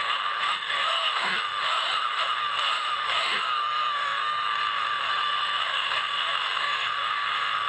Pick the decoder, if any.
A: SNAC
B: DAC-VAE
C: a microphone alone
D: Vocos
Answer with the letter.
B